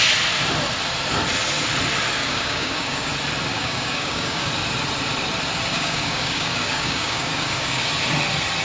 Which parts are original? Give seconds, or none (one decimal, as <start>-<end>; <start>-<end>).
0.0-2.2; 3.1-3.5; 4.5-5.7; 7.8-8.6